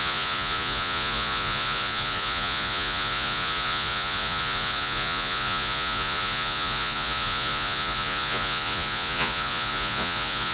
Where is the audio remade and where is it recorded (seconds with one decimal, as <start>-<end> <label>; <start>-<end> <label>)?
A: 0.0-10.5 remade